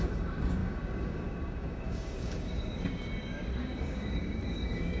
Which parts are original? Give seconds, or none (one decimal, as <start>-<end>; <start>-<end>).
none